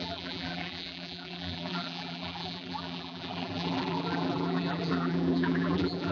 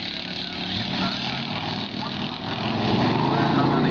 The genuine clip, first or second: second